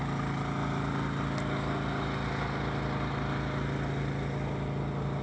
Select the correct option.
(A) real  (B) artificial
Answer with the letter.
A